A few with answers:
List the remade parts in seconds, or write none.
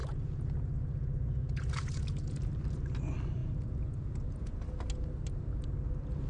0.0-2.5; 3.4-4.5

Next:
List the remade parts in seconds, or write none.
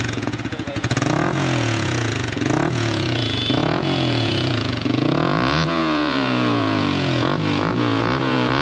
0.0-8.6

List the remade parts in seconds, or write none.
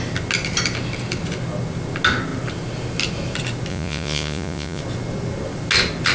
3.7-4.8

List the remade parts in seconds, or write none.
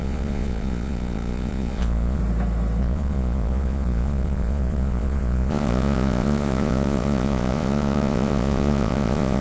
0.0-2.2; 2.8-9.4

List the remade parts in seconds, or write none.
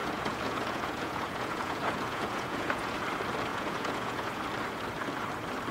0.0-3.0; 3.5-4.4